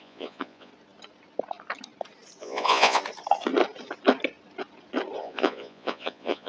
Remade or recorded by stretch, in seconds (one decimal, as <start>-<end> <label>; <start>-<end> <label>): 0.0-0.7 remade; 0.7-2.4 recorded; 2.4-3.0 remade; 3.0-5.2 recorded; 5.2-6.5 remade